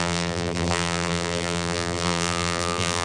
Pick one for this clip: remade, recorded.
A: remade